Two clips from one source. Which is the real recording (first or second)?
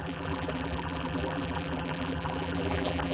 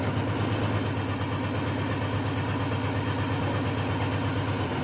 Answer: second